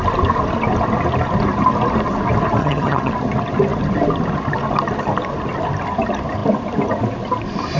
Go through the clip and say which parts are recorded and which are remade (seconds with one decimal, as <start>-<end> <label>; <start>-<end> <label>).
0.0-2.6 recorded; 2.6-3.1 remade; 3.1-7.8 recorded